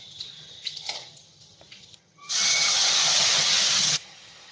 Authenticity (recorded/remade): remade